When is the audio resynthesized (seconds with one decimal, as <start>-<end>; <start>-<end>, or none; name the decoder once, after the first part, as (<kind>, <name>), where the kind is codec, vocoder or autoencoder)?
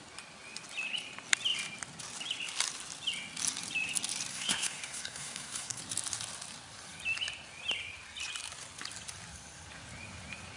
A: 4.3-5.8 (codec, SNAC)